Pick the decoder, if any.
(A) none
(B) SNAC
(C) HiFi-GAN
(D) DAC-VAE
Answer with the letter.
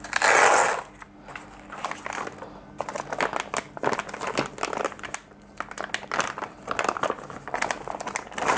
A